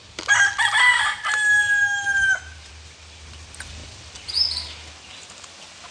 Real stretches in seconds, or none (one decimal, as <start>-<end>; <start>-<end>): 0.0-5.9

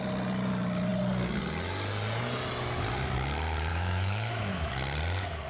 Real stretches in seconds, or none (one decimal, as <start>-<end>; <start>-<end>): 0.0-3.7; 4.7-5.5

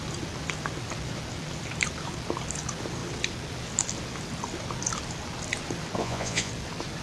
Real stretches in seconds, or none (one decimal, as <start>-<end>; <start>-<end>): 0.0-6.0; 6.5-7.0

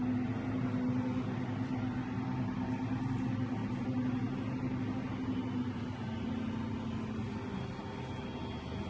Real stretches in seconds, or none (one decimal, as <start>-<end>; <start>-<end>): 0.0-8.9